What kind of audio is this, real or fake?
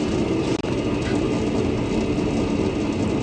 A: real